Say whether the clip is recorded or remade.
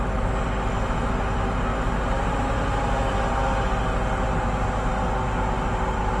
recorded